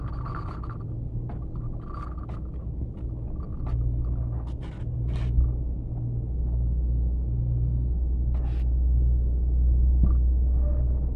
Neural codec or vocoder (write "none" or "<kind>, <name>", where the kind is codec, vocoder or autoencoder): none